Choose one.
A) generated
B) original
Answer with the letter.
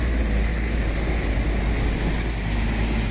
B